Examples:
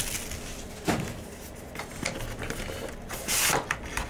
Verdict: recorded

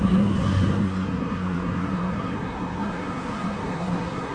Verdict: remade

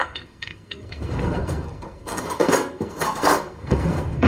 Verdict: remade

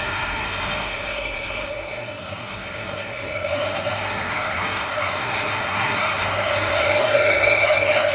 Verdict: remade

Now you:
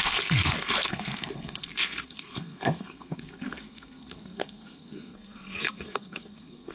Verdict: remade